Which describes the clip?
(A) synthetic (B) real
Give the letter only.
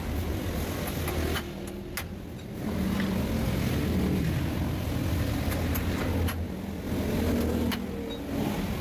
B